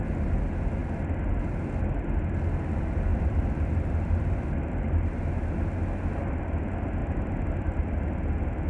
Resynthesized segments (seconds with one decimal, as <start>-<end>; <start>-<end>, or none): 3.1-4.3; 7.0-7.8

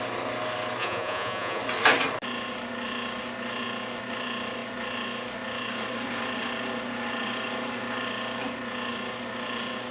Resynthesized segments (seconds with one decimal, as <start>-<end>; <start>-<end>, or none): 0.8-1.6

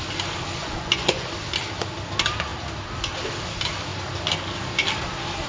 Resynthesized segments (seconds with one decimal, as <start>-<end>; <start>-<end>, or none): 0.6-1.3

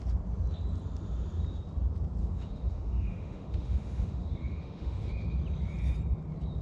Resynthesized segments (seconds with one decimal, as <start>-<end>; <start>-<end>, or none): 2.2-5.1

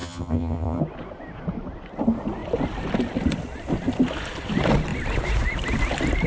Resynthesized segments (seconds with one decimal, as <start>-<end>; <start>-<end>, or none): 0.0-0.8

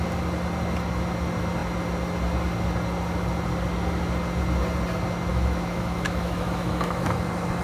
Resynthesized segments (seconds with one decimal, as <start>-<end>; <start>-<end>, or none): 5.3-7.1

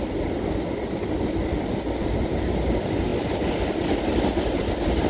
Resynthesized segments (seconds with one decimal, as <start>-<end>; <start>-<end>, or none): none

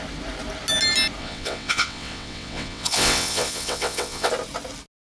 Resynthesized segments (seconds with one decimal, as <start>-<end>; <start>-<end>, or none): 1.2-4.3